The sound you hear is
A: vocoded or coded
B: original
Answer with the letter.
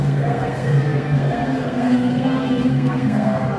A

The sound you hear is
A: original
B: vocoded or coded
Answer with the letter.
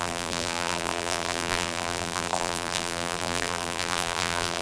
B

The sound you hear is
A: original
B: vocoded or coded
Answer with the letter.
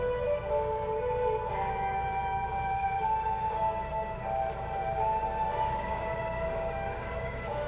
B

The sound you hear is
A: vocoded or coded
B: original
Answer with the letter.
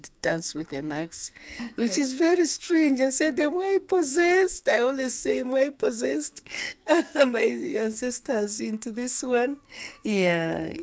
A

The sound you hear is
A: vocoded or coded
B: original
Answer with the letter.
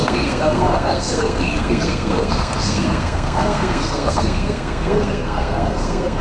A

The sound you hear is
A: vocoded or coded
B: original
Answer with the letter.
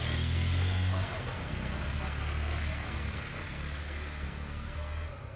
A